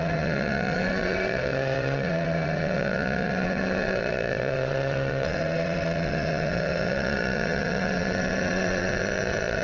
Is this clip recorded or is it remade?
remade